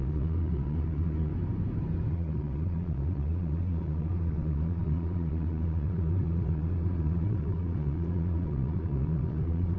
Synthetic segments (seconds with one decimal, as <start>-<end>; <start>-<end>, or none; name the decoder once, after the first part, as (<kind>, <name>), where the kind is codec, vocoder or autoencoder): 0.0-1.3 (vocoder, Vocos); 2.1-9.8